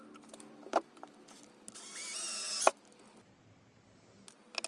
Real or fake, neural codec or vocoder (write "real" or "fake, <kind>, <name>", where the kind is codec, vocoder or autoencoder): real